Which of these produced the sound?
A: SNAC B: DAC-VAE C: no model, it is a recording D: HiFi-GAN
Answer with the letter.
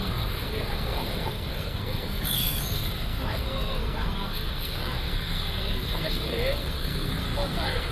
A